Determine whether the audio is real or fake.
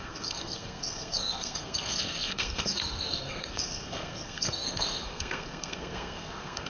fake